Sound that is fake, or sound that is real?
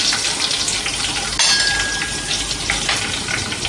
real